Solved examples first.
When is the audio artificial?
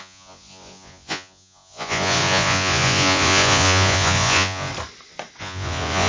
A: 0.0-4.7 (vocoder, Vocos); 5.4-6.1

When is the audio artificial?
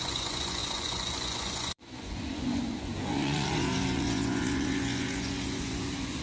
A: 0.0-6.2 (vocoder, Vocos)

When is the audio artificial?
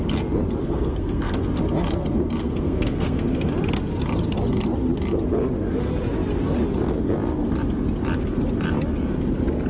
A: 0.6-1.4 (codec, SNAC); 2.4-3.5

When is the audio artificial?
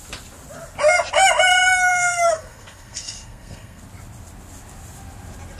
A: 1.9-3.8 (codec, SNAC)